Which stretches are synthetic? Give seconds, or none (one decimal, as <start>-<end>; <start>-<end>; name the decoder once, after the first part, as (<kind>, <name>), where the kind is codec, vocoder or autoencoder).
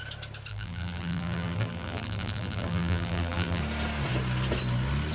0.5-3.6 (vocoder, BigVGAN v2)